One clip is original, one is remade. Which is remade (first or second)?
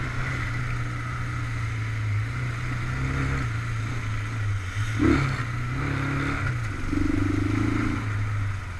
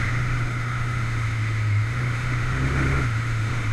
second